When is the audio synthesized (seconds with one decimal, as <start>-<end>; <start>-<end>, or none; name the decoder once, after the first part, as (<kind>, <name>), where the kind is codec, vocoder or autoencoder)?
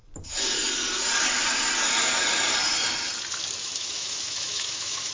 3.6-5.1 (autoencoder, DAC-VAE)